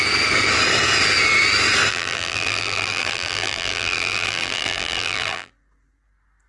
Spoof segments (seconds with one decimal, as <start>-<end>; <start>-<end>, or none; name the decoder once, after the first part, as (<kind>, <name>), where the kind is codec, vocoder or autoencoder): 1.9-5.5 (vocoder, BigVGAN v2)

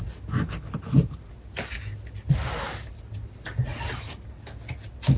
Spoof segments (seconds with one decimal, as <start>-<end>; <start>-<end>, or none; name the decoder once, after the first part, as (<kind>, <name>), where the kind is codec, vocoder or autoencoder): none

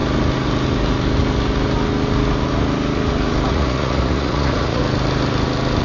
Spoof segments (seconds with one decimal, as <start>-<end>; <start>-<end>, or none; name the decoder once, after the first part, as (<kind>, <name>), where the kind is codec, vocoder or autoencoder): 3.5-4.8 (vocoder, Vocos)

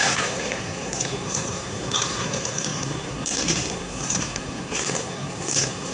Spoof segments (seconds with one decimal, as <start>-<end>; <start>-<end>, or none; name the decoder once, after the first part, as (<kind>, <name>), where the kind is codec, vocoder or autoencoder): 0.0-5.9 (codec, SNAC)

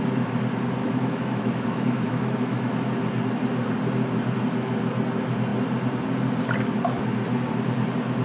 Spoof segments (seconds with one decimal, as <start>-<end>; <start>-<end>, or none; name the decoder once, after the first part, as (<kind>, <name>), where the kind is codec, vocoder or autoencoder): 0.8-2.7 (autoencoder, DAC-VAE)

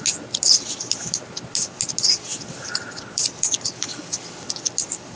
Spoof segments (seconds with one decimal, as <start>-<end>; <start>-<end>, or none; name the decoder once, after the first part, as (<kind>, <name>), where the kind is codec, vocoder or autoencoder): 2.3-4.7 (vocoder, BigVGAN v2)

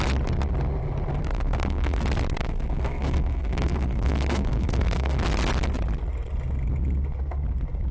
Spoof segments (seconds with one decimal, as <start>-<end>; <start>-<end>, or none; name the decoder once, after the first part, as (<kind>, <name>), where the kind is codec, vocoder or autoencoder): 1.2-2.0 (codec, SNAC); 2.4-5.2